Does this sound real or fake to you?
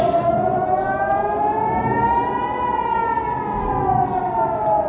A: real